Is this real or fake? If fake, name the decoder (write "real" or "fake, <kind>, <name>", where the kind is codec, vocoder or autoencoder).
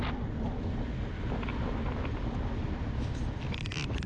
real